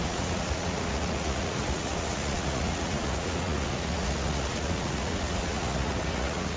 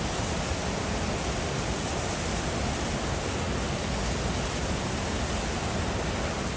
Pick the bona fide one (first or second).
second